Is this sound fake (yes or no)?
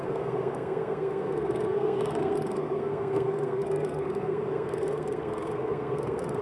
yes